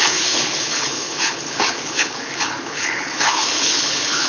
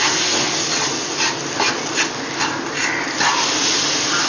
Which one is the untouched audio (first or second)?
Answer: second